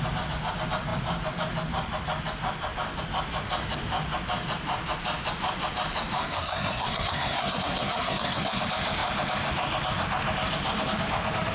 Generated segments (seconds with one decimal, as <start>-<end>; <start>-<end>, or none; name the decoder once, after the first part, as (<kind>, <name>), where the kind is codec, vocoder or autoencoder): 6.2-8.6 (codec, SNAC)